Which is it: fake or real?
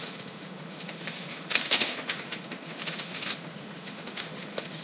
fake